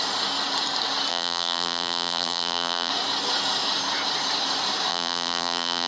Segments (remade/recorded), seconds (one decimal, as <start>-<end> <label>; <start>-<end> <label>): 0.0-1.1 recorded; 1.1-2.9 remade; 2.9-4.9 recorded; 4.9-5.9 remade